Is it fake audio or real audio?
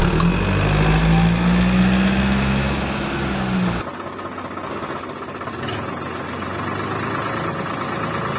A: real